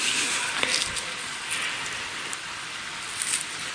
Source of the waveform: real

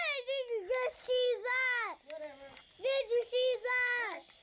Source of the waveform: real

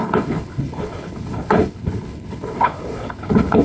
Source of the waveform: fake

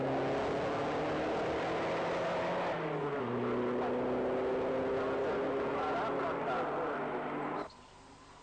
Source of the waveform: real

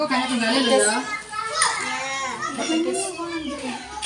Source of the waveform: real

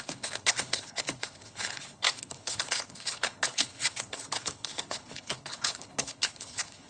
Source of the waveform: fake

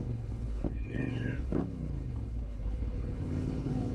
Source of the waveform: fake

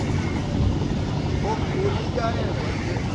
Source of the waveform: real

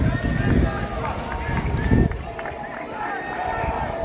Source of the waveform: real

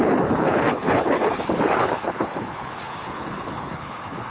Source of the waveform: fake